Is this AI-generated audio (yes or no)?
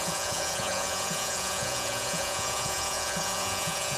yes